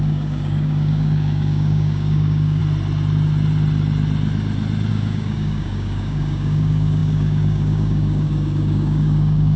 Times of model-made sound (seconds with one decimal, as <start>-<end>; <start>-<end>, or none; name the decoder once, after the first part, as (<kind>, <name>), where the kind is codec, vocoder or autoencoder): 0.0-2.6 (codec, DAC); 4.9-9.6